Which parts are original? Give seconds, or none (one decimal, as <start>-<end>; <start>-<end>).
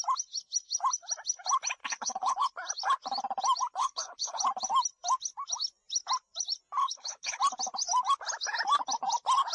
0.0-1.8; 2.5-3.8; 4.4-6.8; 7.4-9.5